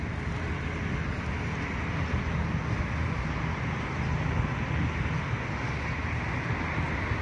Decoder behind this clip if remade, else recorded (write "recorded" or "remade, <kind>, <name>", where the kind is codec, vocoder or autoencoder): recorded